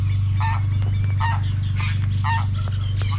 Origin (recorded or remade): recorded